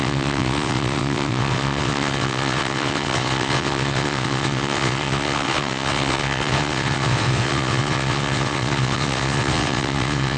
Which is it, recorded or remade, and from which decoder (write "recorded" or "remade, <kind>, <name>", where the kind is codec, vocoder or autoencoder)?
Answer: remade, vocoder, WaveNeXt